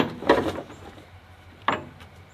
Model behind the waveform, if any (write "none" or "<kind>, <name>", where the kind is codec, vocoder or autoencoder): vocoder, BigVGAN v2